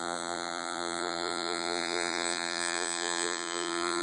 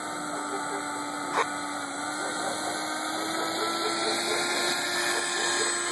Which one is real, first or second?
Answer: second